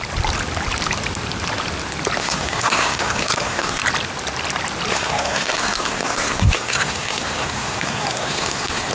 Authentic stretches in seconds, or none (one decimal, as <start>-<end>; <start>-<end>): 0.0-2.2; 3.8-4.9